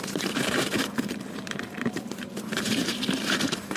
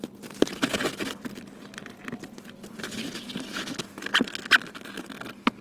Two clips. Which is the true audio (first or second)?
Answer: second